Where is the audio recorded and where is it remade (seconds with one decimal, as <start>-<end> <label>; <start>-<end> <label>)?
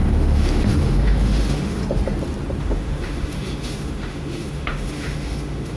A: 0.0-1.8 remade; 1.8-2.6 recorded; 2.6-5.8 remade